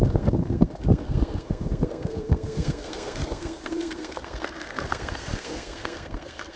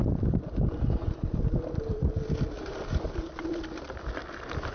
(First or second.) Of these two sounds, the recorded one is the second